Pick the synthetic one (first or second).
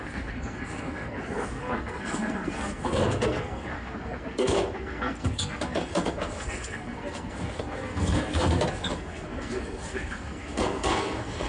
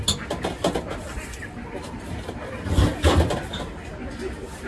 first